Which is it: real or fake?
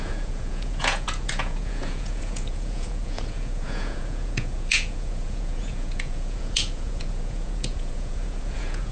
fake